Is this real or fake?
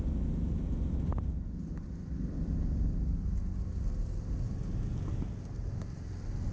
real